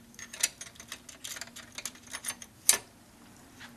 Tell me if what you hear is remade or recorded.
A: recorded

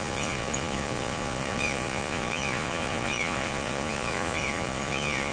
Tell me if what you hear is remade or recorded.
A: remade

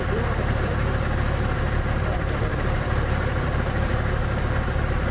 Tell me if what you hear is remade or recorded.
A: remade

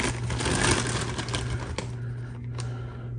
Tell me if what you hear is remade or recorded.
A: recorded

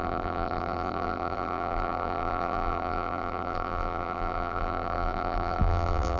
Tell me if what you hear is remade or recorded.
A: remade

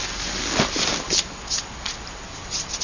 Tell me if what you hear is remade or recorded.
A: recorded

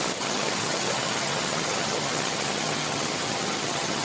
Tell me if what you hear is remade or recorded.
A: remade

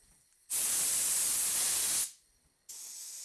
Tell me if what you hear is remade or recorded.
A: recorded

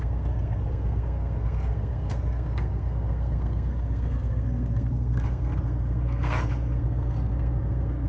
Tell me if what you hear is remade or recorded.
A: remade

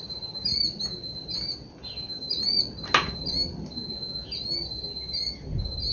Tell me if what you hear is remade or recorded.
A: recorded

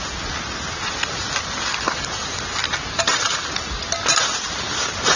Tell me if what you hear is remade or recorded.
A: recorded